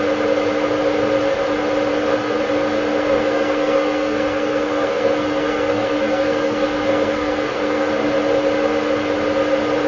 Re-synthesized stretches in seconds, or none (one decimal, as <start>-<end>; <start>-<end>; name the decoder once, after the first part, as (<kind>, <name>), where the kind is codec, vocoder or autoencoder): 1.9-2.4 (codec, SNAC); 2.9-7.9